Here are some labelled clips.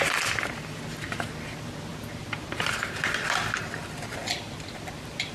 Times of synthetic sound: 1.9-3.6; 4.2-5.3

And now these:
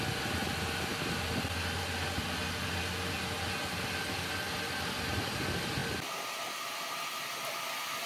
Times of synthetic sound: none